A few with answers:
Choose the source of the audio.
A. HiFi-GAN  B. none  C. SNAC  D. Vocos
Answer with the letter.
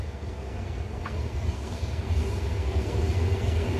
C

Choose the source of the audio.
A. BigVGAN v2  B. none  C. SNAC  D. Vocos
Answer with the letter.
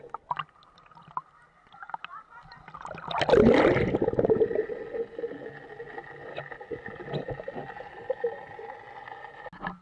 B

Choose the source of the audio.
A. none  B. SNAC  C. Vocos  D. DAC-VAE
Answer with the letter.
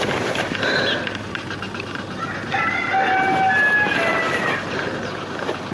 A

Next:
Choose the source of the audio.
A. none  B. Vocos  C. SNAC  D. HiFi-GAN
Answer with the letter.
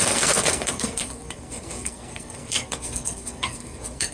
C